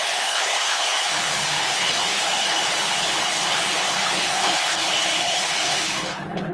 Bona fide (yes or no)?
no